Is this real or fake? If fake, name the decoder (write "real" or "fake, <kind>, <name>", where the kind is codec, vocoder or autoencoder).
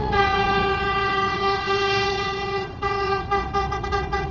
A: fake, vocoder, WaveNeXt